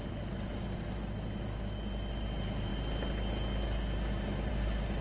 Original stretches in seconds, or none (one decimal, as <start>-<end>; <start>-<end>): 0.0-5.0